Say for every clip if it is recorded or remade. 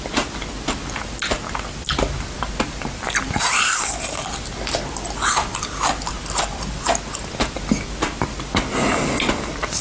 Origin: recorded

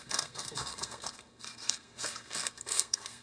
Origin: remade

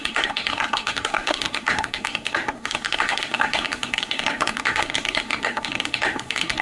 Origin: remade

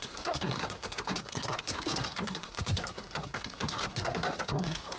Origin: remade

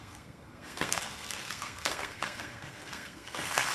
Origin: remade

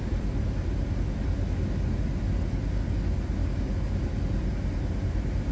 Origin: recorded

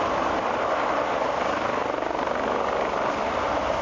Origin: recorded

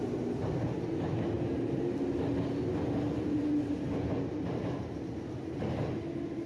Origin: recorded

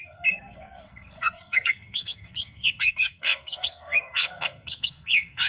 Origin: remade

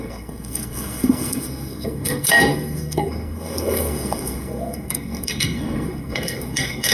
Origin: remade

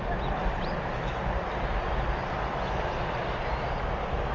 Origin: recorded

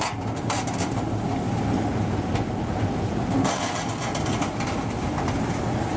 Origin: recorded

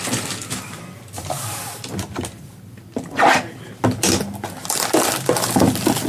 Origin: recorded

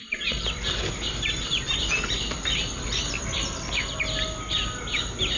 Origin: recorded